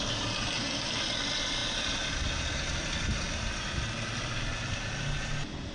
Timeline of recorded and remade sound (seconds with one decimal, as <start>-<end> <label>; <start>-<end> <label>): 0.0-5.7 recorded